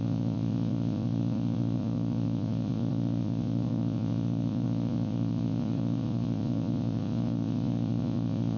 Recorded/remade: remade